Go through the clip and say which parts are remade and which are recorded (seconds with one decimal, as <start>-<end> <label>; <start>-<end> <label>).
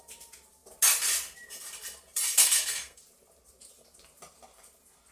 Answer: 0.0-2.4 recorded; 2.4-3.0 remade; 3.0-5.1 recorded